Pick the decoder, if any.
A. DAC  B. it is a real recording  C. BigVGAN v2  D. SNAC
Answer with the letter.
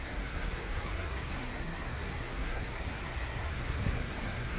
D